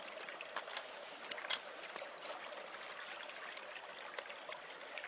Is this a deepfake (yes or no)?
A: no